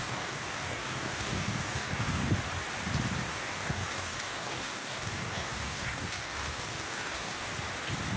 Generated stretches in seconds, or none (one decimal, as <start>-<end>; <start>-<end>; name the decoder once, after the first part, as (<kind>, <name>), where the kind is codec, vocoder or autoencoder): 0.0-2.2 (codec, DAC); 3.3-7.5